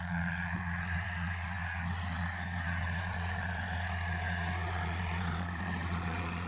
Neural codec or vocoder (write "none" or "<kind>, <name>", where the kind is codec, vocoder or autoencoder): vocoder, Vocos